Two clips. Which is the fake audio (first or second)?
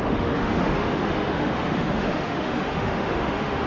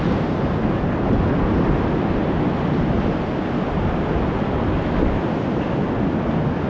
first